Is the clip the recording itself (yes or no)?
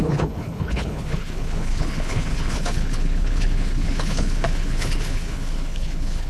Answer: no